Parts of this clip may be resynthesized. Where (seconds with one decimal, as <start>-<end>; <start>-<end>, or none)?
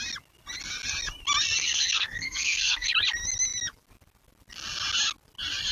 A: 1.6-2.9